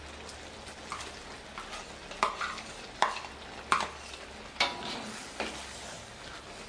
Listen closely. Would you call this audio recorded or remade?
recorded